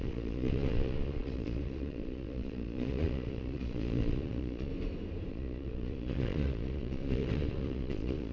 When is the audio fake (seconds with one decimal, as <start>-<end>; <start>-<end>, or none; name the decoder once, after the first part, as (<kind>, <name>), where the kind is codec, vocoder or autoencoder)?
0.0-4.7 (vocoder, Vocos); 5.3-8.3